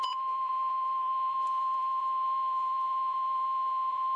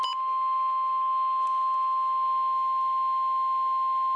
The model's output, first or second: first